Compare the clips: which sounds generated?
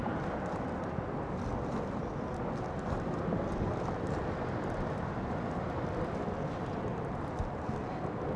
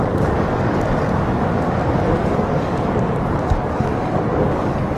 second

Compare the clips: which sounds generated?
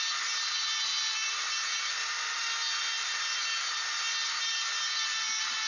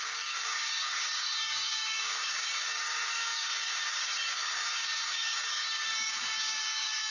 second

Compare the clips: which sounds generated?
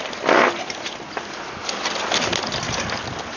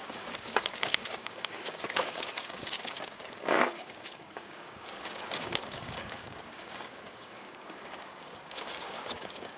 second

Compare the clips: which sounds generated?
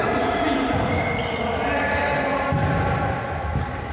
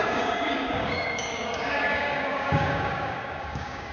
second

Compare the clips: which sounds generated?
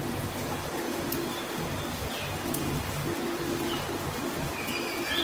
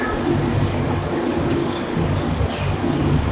second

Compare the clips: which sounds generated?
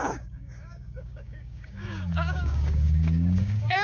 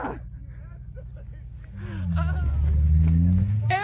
first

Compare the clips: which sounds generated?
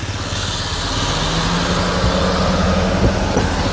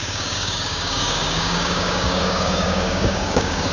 second